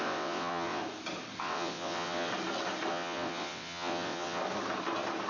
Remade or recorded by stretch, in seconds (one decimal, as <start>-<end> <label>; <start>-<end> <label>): 0.0-0.8 remade; 0.8-1.4 recorded; 1.4-2.3 remade; 2.3-2.9 recorded; 2.9-4.4 remade; 4.4-5.3 recorded